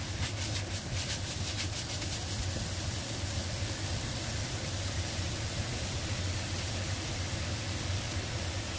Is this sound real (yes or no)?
yes